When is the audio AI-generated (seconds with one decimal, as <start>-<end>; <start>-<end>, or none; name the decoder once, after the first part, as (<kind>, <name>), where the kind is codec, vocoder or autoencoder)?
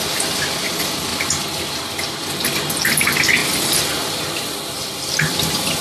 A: 3.4-5.8 (vocoder, BigVGAN v2)